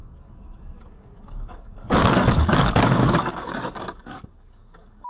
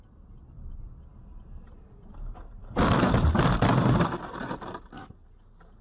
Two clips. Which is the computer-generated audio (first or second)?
first